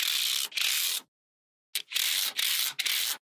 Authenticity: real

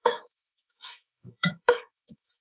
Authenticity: fake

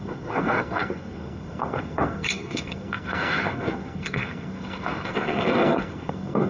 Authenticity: fake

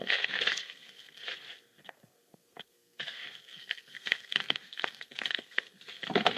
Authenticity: fake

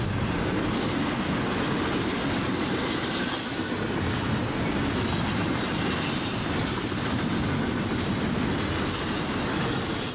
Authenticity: real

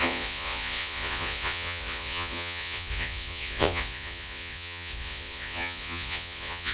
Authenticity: fake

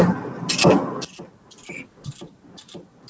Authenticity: real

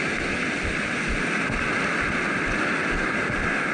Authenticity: real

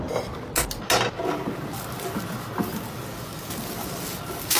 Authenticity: real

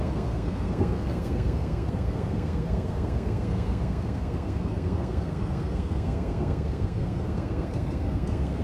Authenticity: fake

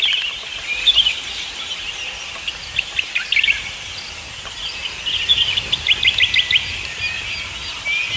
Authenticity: real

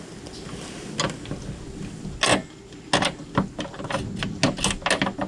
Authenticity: real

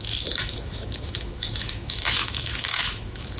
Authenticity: fake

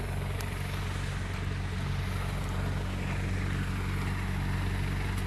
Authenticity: real